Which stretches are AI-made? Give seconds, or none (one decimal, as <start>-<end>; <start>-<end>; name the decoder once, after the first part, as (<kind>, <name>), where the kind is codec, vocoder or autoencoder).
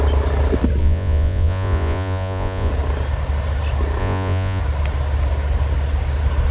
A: 0.8-2.7 (vocoder, Vocos); 4.0-4.6